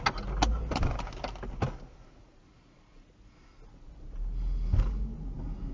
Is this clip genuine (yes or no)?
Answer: yes